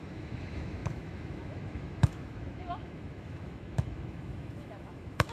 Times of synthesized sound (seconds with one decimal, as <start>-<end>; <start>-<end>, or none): 0.0-5.3